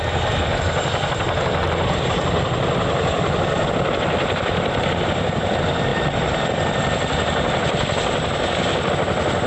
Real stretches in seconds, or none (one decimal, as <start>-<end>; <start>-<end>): 0.0-9.5